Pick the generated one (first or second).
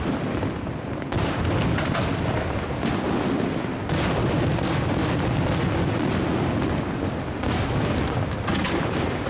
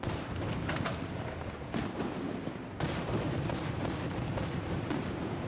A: second